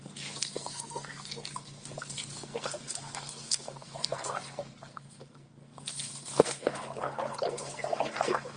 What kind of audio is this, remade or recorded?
remade